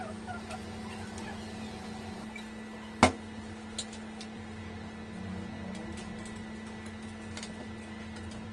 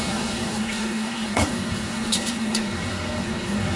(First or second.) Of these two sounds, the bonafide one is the first